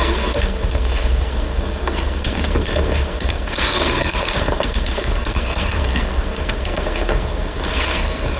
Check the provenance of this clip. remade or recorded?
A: remade